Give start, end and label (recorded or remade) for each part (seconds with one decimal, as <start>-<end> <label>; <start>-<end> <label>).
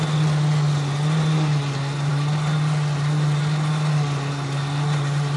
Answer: 0.0-5.4 recorded